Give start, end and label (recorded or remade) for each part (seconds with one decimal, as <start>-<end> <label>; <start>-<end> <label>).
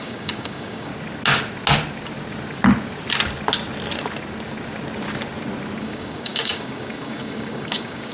0.0-0.9 remade; 0.9-5.8 recorded; 5.8-8.1 remade